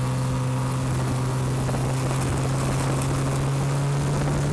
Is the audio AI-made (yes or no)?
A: no